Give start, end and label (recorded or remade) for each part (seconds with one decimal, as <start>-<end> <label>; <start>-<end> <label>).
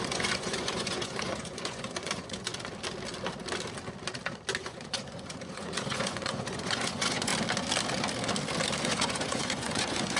0.0-2.5 remade; 2.5-4.6 recorded; 4.6-7.3 remade; 7.3-8.8 recorded; 8.8-10.2 remade